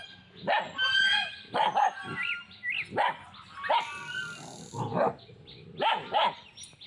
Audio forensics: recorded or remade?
recorded